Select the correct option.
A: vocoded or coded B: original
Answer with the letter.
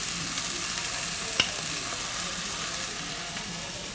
B